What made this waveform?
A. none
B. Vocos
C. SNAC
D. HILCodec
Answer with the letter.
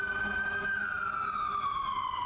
A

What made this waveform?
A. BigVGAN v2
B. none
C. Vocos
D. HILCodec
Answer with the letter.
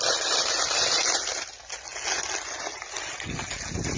B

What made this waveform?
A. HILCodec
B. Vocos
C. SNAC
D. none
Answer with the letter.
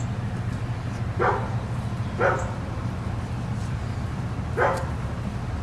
D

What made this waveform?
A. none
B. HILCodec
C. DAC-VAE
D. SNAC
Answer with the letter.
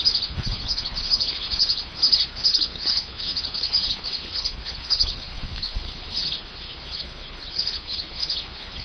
B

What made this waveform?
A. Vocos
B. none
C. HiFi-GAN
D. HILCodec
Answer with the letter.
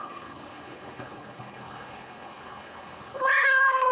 D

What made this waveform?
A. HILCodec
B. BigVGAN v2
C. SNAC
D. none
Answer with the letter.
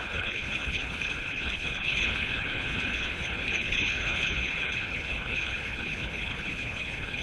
A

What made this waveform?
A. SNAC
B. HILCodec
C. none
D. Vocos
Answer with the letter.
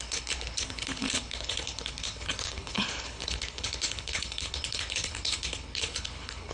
B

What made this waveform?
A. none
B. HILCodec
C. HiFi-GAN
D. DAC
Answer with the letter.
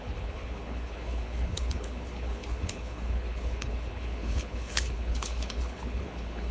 B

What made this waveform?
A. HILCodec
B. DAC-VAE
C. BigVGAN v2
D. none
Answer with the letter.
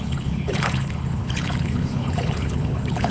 A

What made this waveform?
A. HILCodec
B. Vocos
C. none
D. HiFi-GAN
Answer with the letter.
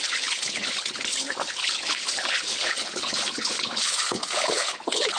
A